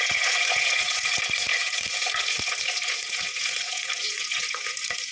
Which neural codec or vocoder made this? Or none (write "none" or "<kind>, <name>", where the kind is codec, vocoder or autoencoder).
vocoder, Vocos